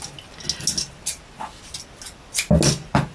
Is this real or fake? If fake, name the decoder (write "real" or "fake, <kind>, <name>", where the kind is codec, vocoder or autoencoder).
real